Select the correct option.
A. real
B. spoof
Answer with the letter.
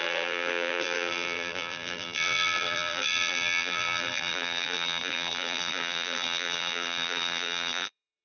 B